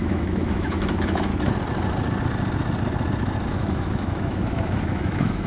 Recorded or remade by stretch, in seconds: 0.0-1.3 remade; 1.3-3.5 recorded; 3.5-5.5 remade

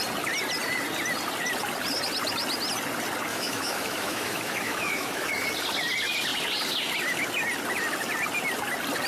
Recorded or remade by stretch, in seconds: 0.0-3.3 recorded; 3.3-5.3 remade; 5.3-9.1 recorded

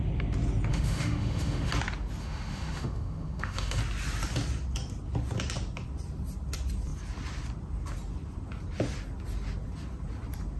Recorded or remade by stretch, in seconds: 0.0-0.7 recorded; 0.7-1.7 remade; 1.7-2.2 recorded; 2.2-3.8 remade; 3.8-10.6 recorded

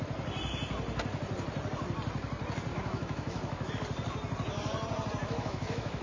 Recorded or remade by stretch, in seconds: 0.0-2.7 recorded; 2.7-3.7 remade; 3.7-5.2 recorded; 5.2-6.0 remade

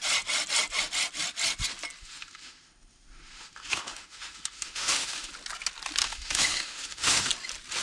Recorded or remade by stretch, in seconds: 0.0-2.0 recorded; 2.0-5.3 remade; 5.3-6.0 recorded; 6.0-7.3 remade; 7.3-7.8 recorded

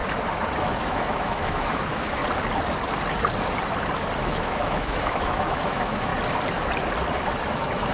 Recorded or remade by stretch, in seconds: 0.0-0.6 recorded; 0.6-2.2 remade; 2.2-4.2 recorded; 4.2-6.1 remade; 6.1-7.4 recorded; 7.4-7.9 remade